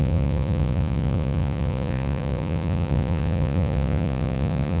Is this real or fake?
fake